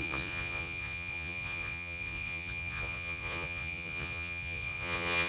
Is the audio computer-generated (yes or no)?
yes